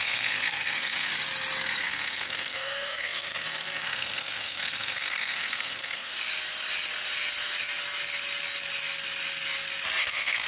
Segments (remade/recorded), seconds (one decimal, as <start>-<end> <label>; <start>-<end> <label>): 0.0-1.1 remade; 1.1-1.8 recorded; 1.8-6.1 remade; 6.1-10.0 recorded; 10.0-10.5 remade

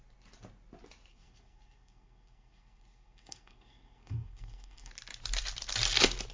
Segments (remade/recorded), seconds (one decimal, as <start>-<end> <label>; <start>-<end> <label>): 0.0-1.1 recorded; 1.1-4.9 remade; 4.9-6.3 recorded

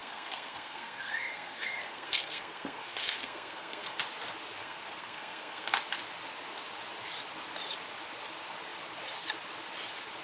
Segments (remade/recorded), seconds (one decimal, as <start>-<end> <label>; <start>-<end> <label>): 0.0-4.0 remade; 4.0-4.6 recorded; 4.6-5.7 remade; 5.7-10.2 recorded

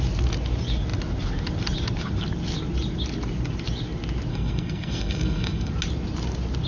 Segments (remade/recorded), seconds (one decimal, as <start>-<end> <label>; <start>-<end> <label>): 0.0-4.3 recorded; 4.3-5.7 remade; 5.7-6.7 recorded

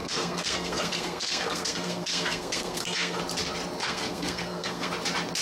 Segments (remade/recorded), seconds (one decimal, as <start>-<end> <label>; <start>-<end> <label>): 0.0-3.2 remade; 3.2-3.8 recorded; 3.8-4.9 remade; 4.9-5.4 recorded

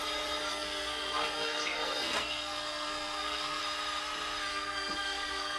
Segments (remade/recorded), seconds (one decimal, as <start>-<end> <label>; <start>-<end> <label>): 0.0-0.5 recorded; 0.5-3.6 remade; 3.6-4.5 recorded; 4.5-5.6 remade

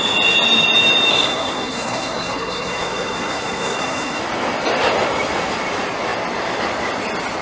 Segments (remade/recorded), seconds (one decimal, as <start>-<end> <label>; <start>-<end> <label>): 0.0-1.1 recorded; 1.1-4.2 remade; 4.2-7.4 recorded

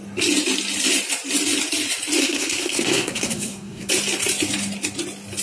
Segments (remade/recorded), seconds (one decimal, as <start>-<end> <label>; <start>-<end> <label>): 0.0-2.2 recorded; 2.2-3.9 remade; 3.9-5.4 recorded